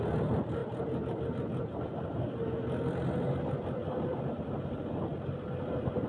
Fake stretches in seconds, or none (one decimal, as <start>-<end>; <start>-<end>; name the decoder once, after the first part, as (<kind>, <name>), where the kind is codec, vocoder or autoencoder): none